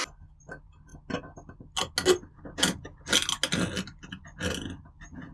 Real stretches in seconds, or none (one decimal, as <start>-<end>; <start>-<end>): 0.0-5.3